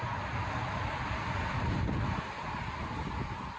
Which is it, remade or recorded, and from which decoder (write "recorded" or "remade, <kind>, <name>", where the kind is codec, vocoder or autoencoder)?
recorded